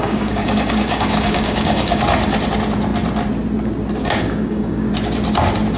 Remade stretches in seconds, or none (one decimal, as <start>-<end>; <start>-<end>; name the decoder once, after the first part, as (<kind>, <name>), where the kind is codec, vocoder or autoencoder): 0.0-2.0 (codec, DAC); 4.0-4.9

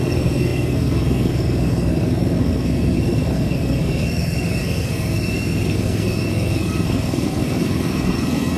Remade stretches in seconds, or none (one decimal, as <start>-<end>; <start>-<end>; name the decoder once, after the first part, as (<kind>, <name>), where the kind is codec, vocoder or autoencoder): 0.0-8.6 (codec, SNAC)

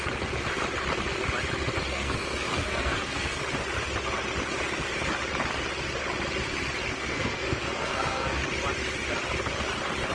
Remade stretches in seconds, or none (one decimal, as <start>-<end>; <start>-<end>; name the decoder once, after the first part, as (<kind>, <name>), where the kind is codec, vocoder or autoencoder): 1.9-3.4 (codec, SNAC); 6.9-8.4

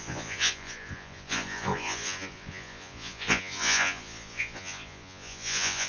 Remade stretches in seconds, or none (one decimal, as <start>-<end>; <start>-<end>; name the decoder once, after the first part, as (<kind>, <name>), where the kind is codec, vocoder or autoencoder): 0.0-5.9 (vocoder, Vocos)

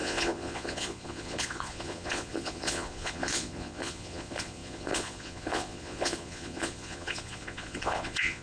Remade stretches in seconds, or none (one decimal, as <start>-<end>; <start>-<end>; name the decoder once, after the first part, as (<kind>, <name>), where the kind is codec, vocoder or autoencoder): 0.0-8.4 (vocoder, Vocos)

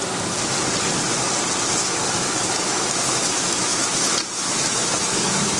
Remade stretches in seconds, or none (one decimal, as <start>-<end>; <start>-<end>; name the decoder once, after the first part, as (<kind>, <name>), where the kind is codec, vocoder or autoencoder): 1.8-5.6 (autoencoder, DAC-VAE)